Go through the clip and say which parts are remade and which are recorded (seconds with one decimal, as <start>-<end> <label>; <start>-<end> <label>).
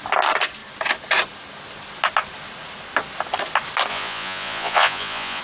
0.0-3.9 recorded; 3.9-5.4 remade